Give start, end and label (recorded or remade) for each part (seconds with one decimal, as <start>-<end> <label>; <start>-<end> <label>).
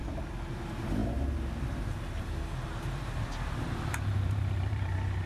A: 0.0-0.5 recorded; 0.5-5.3 remade